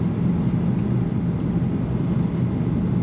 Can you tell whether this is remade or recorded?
recorded